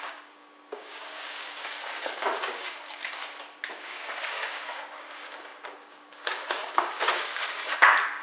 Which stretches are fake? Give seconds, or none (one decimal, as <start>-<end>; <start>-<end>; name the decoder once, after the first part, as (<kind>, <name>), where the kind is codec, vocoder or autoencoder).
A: 0.0-3.2 (codec, DAC); 3.7-8.2